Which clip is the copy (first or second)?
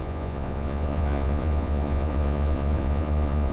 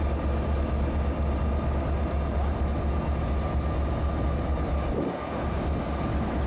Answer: first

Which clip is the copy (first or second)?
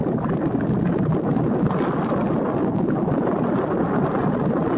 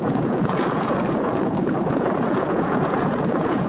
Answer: second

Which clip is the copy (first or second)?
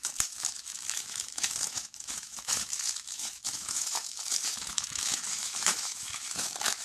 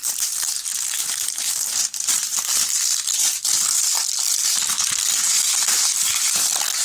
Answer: first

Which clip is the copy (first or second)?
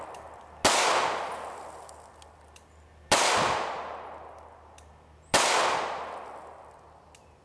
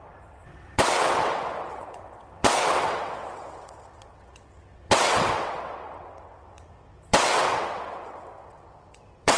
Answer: second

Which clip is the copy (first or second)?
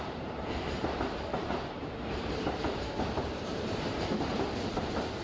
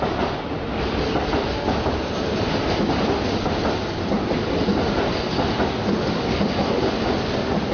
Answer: first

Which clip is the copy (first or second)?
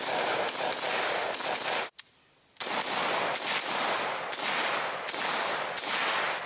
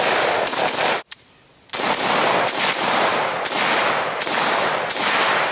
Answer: second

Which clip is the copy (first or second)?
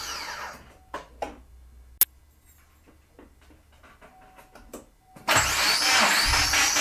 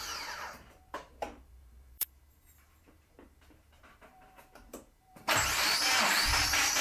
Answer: second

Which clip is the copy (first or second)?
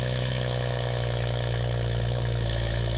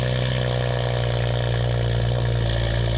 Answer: first